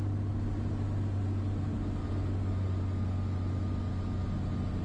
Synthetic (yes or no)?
no